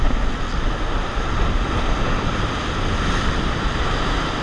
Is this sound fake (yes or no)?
no